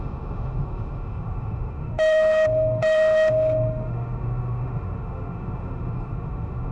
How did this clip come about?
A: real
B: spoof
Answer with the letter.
B